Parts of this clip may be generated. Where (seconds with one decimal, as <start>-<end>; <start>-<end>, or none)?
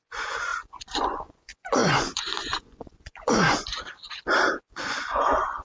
0.0-3.7; 4.6-5.6